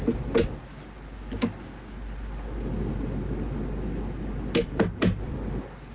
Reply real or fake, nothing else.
real